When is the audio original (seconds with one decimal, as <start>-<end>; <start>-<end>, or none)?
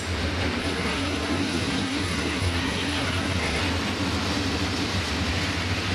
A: 0.0-0.6; 3.6-5.9